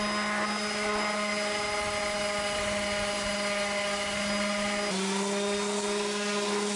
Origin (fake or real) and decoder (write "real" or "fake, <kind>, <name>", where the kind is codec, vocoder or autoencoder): real